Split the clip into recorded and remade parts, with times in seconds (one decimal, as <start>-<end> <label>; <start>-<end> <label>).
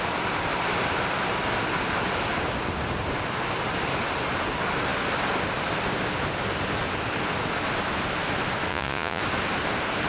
0.0-8.7 recorded; 8.7-9.2 remade; 9.2-10.1 recorded